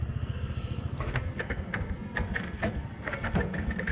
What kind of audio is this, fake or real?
fake